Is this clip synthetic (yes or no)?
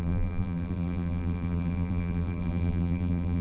yes